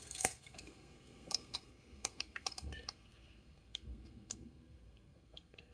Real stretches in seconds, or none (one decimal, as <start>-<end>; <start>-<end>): none